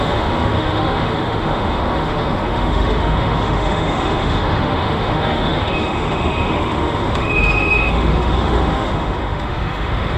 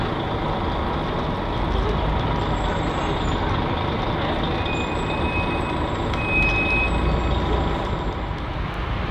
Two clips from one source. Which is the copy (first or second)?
first